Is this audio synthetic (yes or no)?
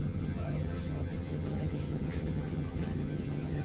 yes